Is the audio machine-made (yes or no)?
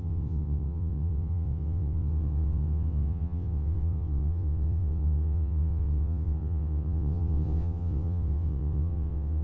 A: yes